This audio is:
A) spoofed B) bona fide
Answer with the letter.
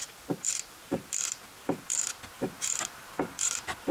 B